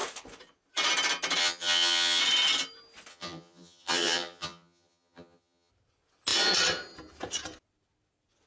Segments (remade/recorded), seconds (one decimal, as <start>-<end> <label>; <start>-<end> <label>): 0.0-1.4 recorded; 1.4-2.2 remade; 2.2-3.1 recorded; 3.1-5.7 remade; 5.7-8.5 recorded